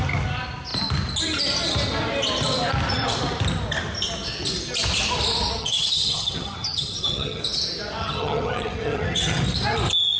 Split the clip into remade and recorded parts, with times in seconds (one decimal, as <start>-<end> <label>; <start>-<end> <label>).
0.0-5.6 recorded; 5.6-7.4 remade; 7.4-8.0 recorded; 8.0-9.4 remade; 9.4-10.2 recorded